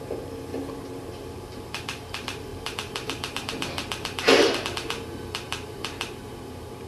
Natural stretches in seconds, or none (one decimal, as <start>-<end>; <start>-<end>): none

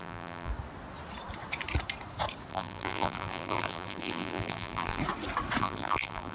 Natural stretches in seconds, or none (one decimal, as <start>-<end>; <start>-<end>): 0.5-2.5; 5.0-5.6

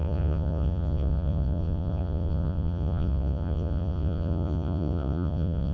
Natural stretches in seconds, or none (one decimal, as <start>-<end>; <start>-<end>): none

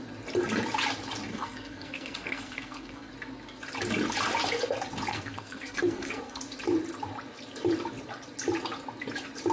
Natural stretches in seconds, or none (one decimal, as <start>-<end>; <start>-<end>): 0.0-1.3; 3.1-5.1; 6.4-9.5

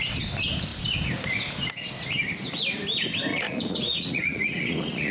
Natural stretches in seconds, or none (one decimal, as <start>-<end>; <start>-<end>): 0.0-3.3

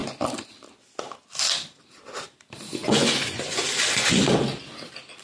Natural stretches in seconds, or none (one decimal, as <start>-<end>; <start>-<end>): 0.0-2.8; 4.2-5.2

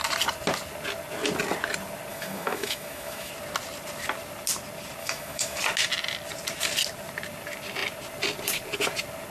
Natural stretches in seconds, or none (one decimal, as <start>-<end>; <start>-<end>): 0.0-2.1; 3.3-5.0; 5.6-9.3